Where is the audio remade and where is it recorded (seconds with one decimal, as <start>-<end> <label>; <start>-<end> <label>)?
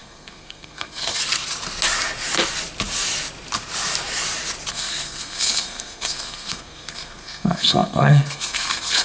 0.0-1.2 remade; 1.2-4.7 recorded; 4.7-9.0 remade